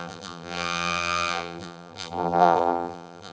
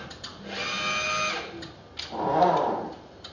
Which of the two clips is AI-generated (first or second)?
first